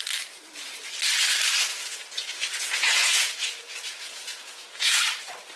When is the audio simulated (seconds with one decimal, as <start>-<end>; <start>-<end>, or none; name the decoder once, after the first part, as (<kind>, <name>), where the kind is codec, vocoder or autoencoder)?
1.7-5.0 (vocoder, Vocos)